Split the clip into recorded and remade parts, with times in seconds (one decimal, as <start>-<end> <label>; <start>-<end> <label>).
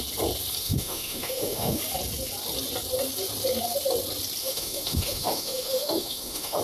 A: 0.0-0.6 recorded; 0.6-1.8 remade; 1.8-4.4 recorded; 4.4-6.6 remade